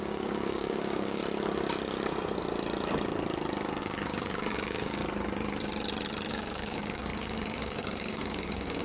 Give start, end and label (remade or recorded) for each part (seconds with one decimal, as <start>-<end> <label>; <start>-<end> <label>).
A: 0.0-1.2 remade; 1.2-3.8 recorded; 3.8-5.0 remade; 5.0-6.3 recorded; 6.3-8.8 remade